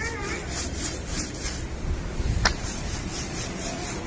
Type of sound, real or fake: real